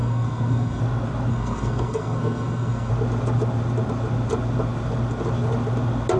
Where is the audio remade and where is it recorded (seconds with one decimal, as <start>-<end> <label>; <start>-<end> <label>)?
0.0-0.8 remade; 0.8-1.3 recorded; 1.3-2.9 remade; 2.9-6.2 recorded